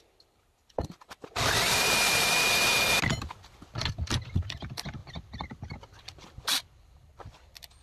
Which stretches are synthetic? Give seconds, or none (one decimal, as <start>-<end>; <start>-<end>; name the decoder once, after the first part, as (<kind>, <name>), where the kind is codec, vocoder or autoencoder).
5.0-7.1 (vocoder, BigVGAN v2)